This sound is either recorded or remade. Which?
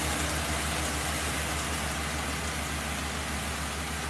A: recorded